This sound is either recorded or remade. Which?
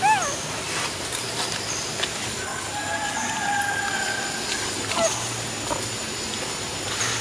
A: recorded